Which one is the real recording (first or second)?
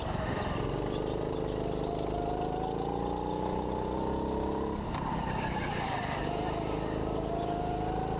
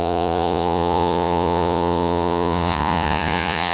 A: first